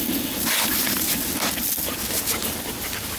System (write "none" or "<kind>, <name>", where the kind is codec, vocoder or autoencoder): none